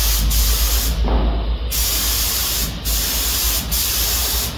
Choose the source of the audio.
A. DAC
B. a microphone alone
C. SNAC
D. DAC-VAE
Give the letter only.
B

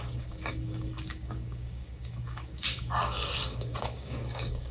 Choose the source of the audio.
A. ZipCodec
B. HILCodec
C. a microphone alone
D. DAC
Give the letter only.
D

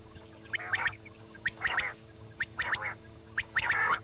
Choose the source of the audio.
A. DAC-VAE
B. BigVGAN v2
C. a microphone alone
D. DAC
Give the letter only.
D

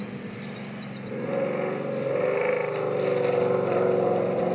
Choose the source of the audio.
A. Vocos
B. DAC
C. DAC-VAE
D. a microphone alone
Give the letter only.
D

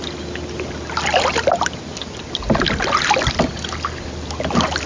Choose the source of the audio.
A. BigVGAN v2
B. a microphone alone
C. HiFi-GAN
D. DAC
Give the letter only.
B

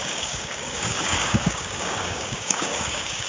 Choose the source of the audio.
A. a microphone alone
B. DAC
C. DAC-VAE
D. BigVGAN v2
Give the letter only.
B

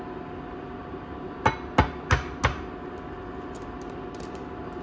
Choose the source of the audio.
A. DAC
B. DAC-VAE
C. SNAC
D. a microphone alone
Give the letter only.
D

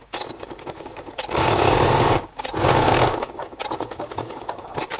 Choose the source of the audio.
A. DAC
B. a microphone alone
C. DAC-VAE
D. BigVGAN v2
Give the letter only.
A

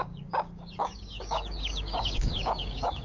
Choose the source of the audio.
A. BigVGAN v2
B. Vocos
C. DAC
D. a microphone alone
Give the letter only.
C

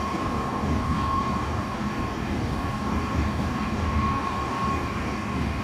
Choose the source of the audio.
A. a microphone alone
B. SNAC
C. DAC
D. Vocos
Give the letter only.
C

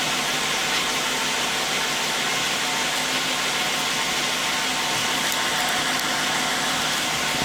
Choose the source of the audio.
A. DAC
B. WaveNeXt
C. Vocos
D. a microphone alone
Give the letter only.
D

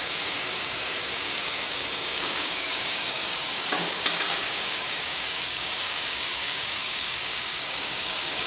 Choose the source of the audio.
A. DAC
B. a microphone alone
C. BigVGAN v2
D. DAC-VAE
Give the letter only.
A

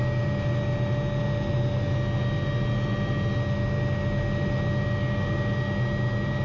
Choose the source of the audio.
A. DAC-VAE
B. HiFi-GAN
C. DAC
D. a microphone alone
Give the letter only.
D